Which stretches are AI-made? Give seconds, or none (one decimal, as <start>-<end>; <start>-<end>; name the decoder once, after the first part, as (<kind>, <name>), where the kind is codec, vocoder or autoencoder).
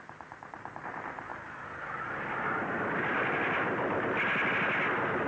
none